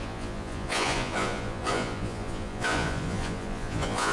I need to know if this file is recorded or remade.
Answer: remade